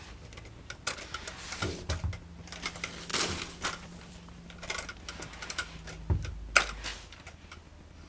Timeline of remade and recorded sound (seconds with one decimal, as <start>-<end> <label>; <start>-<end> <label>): 0.0-8.1 recorded